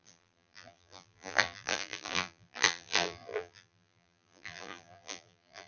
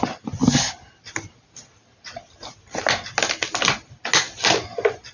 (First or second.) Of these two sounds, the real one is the second